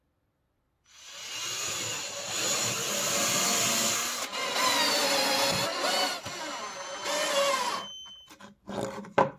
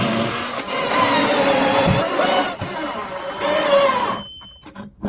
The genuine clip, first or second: first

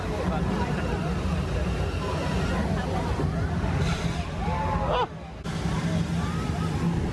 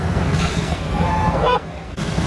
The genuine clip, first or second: first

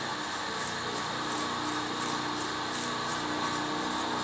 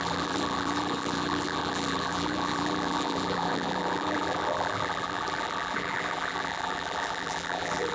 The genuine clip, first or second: first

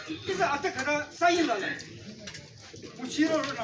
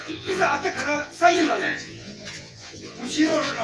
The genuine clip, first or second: first